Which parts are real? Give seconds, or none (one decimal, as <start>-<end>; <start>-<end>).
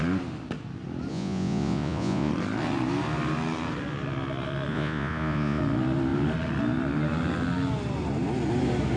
0.0-1.1; 2.3-4.7; 5.6-9.0